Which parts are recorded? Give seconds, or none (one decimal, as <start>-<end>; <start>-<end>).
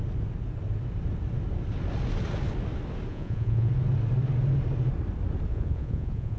0.0-3.1; 3.7-5.5